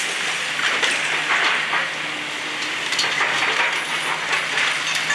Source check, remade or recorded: recorded